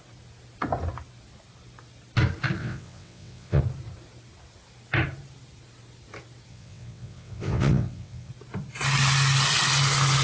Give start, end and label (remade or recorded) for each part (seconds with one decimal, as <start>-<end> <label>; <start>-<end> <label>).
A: 0.0-2.6 recorded; 2.6-3.6 remade; 3.6-6.5 recorded; 6.5-8.3 remade; 8.3-10.2 recorded